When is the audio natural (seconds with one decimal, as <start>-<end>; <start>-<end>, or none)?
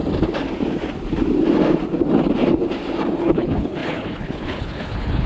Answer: 0.0-3.2